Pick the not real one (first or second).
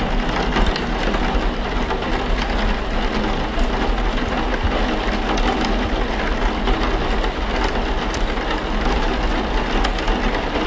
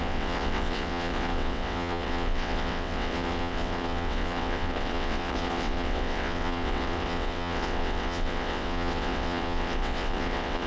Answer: second